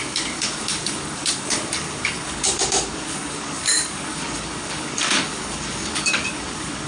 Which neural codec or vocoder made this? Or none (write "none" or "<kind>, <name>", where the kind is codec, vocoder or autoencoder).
codec, DAC